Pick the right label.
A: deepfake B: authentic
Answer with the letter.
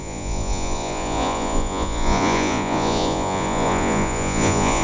A